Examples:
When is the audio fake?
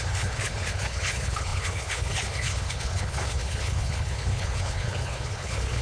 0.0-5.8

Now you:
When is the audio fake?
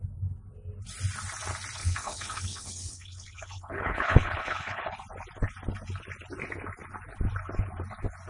1.8-4.8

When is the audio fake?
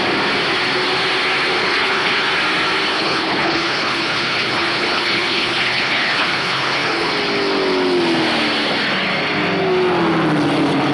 1.6-2.3; 2.9-7.1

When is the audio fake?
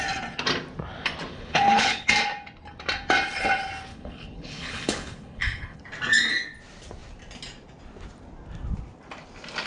1.3-2.1; 3.9-5.8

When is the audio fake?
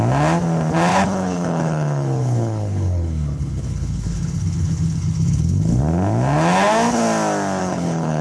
0.9-5.8; 7.6-8.2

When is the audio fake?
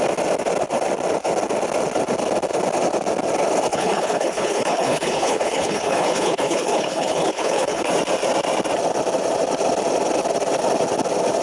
3.7-7.9